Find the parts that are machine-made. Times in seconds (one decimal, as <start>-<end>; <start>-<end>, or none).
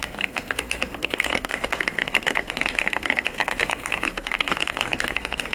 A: 0.0-5.5